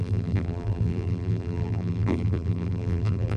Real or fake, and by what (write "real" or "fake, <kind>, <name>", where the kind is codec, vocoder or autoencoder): fake, vocoder, BigVGAN v2